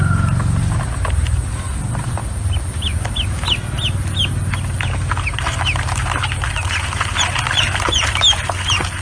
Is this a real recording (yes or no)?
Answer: yes